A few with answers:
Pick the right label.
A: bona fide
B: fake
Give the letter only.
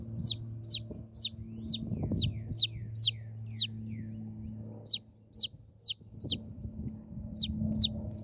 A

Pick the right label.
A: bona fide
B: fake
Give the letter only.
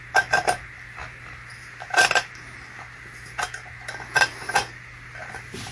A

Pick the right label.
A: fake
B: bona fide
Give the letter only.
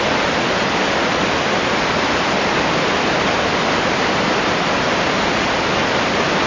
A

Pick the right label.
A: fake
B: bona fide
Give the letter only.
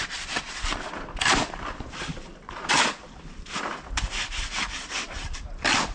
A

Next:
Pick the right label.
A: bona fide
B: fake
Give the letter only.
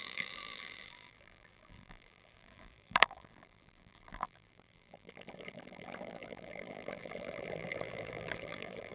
B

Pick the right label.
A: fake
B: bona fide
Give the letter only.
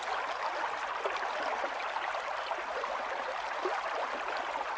B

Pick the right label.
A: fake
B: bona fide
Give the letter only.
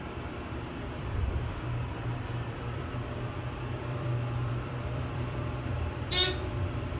A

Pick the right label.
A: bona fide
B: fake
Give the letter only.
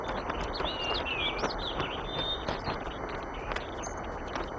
A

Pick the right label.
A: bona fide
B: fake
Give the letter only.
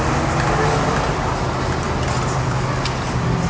A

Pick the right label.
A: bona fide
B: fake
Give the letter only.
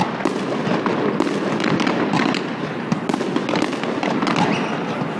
A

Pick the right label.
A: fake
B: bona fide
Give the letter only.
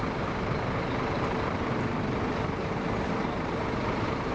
A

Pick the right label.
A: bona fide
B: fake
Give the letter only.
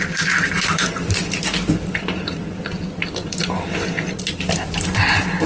B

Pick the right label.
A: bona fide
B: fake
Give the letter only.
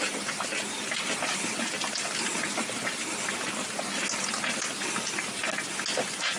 A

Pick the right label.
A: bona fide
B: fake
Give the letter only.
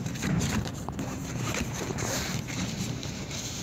B